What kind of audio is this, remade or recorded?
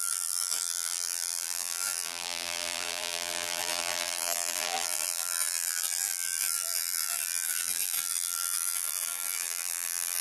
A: remade